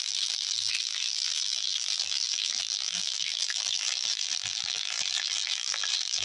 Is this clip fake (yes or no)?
yes